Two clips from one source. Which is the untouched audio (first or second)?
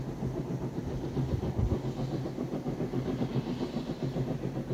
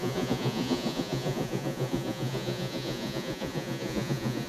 first